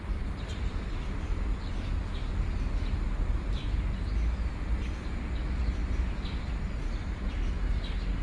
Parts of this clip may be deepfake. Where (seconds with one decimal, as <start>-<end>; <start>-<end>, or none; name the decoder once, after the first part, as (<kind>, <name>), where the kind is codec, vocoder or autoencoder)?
none